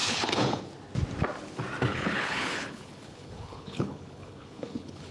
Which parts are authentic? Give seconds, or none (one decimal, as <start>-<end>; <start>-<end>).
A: 0.6-1.9